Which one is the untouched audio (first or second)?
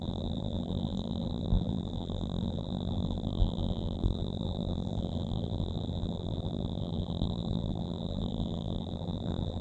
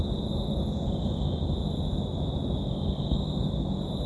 second